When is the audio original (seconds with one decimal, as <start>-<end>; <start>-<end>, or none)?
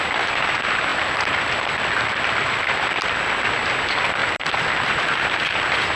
0.0-0.9; 3.5-4.2; 5.0-6.0